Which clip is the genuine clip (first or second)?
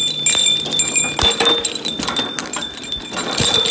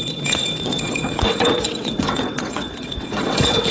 first